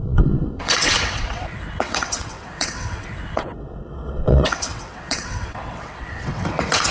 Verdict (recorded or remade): remade